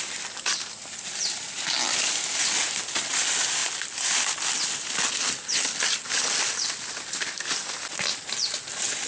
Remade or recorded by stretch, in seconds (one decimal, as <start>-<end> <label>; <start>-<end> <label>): 0.0-9.1 recorded